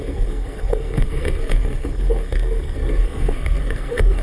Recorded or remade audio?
remade